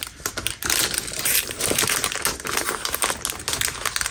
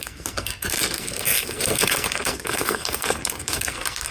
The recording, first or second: first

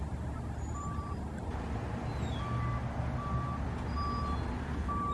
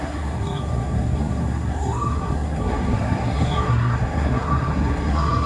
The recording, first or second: first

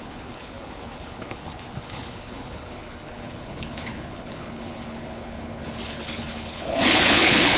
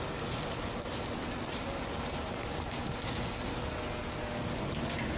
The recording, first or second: second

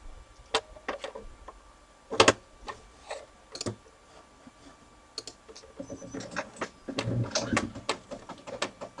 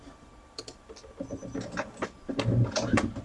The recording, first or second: first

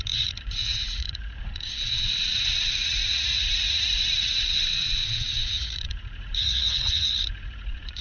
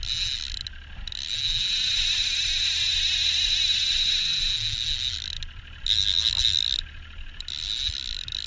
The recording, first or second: second